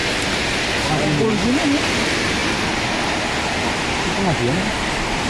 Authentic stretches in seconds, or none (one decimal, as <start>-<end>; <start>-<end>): 0.0-5.3